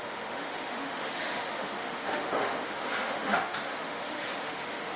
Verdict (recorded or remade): remade